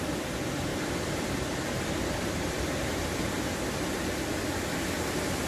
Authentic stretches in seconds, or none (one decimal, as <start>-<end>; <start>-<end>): 0.0-0.7; 3.6-5.5